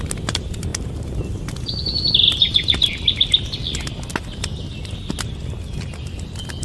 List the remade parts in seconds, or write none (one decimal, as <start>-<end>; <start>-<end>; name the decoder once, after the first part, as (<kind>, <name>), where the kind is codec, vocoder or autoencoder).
none